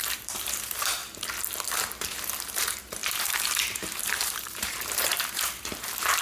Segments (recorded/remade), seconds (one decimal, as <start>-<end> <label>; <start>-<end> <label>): 0.0-1.0 remade; 1.0-2.1 recorded; 2.1-6.2 remade